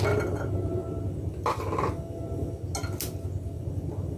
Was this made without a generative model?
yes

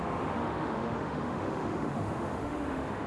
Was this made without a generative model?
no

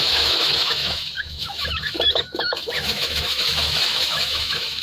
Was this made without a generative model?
no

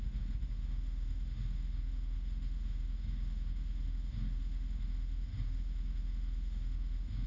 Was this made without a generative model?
no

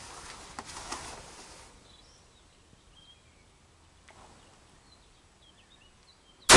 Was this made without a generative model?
yes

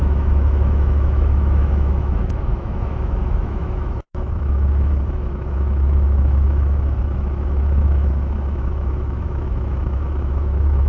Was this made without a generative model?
no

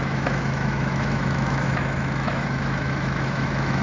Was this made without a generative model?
no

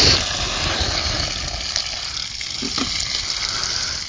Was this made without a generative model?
yes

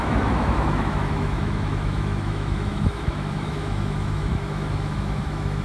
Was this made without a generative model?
no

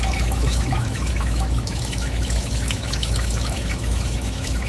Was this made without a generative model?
no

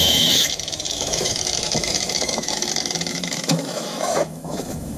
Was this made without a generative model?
no